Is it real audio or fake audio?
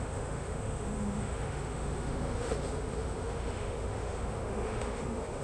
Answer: fake